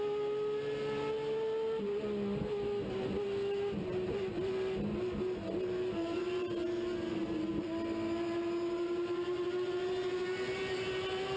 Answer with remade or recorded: recorded